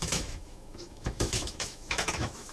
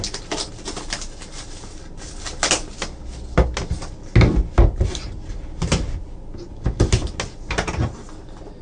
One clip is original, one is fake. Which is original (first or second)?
second